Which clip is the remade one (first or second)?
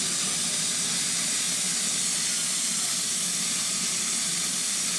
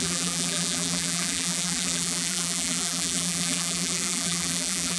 second